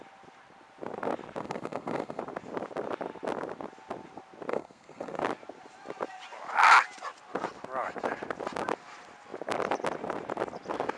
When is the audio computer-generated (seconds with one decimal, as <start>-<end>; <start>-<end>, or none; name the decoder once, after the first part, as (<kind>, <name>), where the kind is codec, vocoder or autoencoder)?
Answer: 1.4-2.2 (codec, SNAC); 4.5-5.2